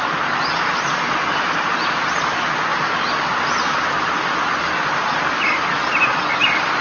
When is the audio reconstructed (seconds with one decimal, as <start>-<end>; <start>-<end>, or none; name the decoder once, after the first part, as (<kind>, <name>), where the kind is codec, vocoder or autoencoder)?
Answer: none

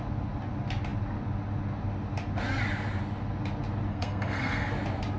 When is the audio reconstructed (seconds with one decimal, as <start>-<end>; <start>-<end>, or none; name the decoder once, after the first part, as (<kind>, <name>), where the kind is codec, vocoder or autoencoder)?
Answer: 3.9-4.7 (codec, SNAC)

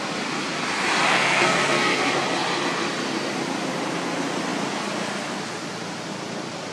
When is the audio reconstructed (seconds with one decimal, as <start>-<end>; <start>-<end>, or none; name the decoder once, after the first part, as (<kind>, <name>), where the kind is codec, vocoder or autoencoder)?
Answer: 1.1-2.1 (codec, SNAC)